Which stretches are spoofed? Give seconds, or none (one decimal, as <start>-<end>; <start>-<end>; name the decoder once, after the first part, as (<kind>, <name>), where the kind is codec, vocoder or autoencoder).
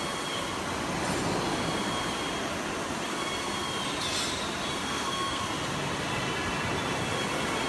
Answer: 4.8-5.4 (codec, SNAC)